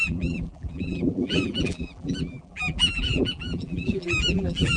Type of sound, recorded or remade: remade